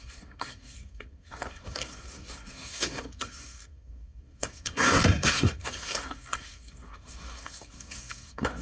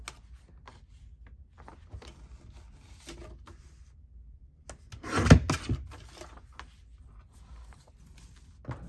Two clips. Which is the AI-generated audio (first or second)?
first